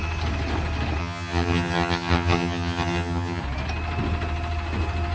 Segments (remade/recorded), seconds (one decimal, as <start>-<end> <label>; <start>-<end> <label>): 0.0-1.0 recorded; 1.0-3.4 remade; 3.4-5.1 recorded